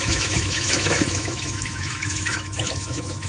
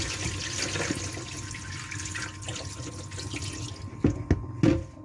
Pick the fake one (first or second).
first